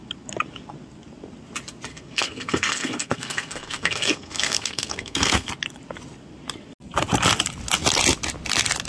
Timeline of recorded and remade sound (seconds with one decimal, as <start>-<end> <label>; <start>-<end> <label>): 0.0-1.9 recorded; 1.9-5.5 remade; 5.5-8.9 recorded